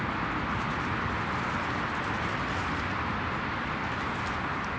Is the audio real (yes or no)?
yes